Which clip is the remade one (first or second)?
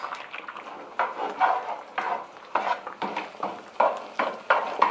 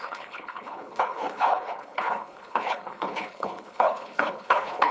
second